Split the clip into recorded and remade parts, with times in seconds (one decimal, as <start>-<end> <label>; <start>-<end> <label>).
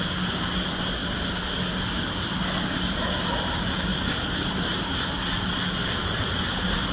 0.0-3.9 recorded; 3.9-4.9 remade; 4.9-6.9 recorded